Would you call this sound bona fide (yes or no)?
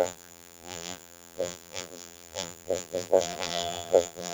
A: no